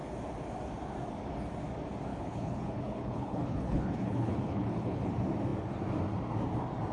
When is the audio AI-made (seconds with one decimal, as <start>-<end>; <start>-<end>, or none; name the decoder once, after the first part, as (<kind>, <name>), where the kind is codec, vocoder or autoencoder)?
2.1-5.1 (codec, HILCodec)